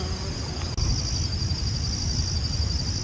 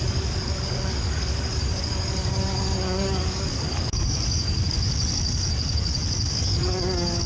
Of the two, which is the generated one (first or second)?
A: second